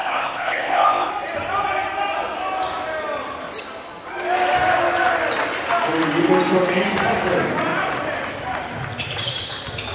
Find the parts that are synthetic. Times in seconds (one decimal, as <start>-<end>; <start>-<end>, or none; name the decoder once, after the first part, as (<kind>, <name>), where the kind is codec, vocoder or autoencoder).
0.0-1.1 (codec, ZipCodec)